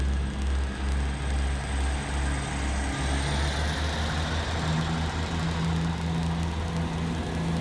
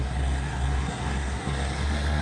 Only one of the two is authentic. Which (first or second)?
first